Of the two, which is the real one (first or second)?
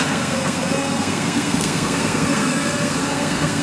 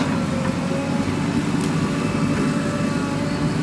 second